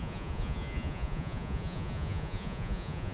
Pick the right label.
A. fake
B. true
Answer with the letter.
A